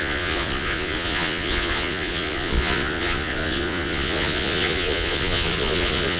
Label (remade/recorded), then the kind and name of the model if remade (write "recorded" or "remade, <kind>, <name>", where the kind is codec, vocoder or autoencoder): remade, vocoder, Vocos